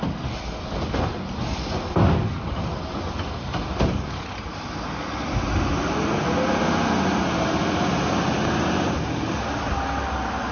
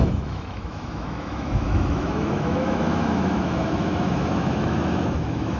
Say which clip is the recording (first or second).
first